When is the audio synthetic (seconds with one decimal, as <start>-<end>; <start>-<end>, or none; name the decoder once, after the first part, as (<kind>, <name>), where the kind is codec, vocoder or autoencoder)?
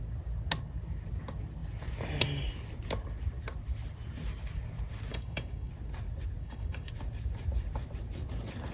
5.1-5.7 (codec, DAC); 6.4-6.9